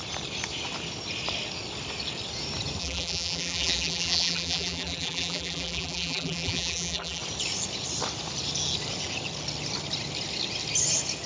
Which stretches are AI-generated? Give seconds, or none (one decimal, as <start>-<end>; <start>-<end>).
2.8-7.2